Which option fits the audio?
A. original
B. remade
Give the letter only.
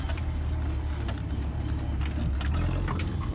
A